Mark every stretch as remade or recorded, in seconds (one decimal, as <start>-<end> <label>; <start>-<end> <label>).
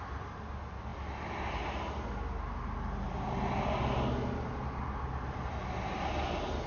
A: 0.0-6.7 recorded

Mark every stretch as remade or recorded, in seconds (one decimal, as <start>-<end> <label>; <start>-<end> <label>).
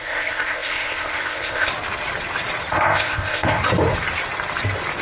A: 0.0-1.7 remade; 1.7-2.7 recorded; 2.7-3.6 remade; 3.6-5.0 recorded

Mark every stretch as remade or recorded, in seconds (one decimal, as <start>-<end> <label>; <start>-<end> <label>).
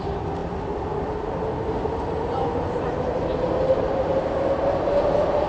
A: 0.0-5.5 recorded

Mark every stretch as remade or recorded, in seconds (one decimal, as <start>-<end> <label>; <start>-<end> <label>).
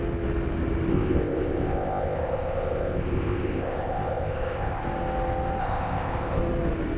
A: 0.0-0.9 recorded; 0.9-4.8 remade; 4.8-5.6 recorded; 5.6-6.4 remade; 6.4-7.0 recorded